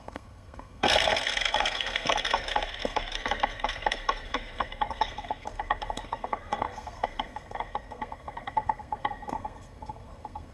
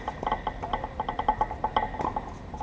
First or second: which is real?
second